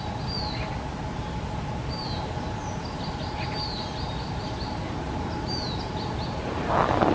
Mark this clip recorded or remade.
recorded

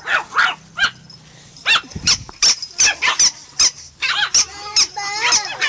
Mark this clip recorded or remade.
recorded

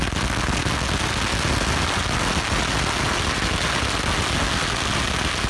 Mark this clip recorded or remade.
recorded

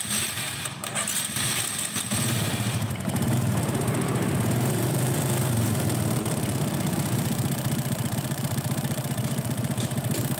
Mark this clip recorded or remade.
remade